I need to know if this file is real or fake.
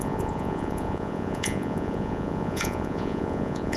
fake